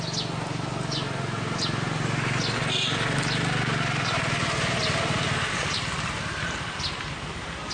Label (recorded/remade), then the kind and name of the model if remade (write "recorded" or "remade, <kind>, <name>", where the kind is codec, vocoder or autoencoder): recorded